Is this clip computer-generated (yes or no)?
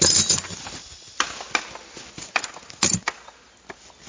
no